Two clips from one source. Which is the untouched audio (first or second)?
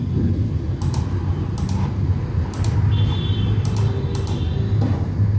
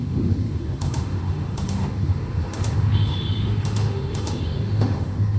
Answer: first